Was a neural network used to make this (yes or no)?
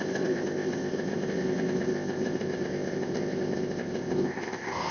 yes